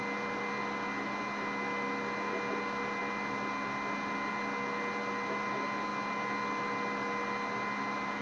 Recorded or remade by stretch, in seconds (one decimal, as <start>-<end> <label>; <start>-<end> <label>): 0.0-8.2 recorded